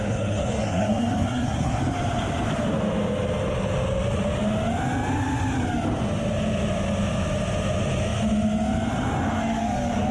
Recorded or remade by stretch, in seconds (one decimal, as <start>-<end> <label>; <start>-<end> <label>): 0.0-1.8 remade; 1.8-10.1 recorded